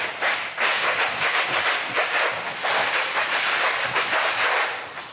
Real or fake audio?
real